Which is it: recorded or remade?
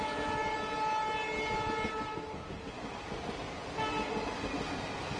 recorded